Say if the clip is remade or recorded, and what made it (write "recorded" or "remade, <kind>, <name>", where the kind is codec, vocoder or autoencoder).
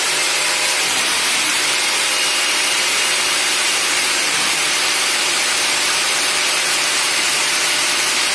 remade, vocoder, BigVGAN v2